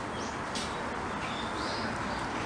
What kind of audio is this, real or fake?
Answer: real